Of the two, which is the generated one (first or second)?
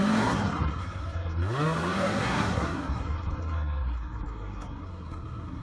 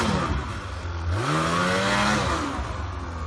first